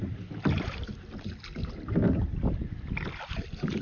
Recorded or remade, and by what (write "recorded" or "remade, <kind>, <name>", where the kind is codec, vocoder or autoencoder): recorded